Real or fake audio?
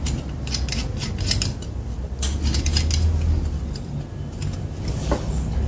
real